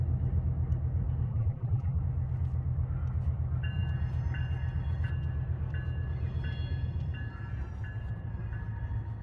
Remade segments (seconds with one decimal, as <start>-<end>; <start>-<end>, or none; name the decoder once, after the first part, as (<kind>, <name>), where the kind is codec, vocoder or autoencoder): 1.3-2.0 (vocoder, BigVGAN v2)